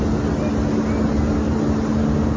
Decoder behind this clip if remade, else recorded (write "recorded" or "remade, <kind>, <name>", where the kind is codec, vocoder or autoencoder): recorded